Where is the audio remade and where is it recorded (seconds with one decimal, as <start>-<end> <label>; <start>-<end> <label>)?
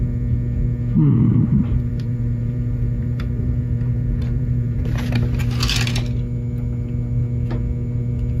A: 0.0-1.3 recorded; 1.3-5.4 remade; 5.4-8.4 recorded